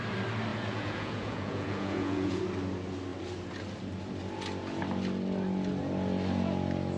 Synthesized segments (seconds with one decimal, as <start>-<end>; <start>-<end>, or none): 0.5-2.4